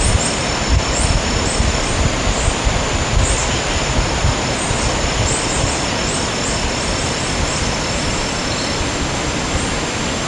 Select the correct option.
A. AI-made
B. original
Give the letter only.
B